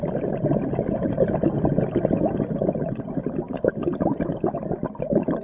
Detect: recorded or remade recorded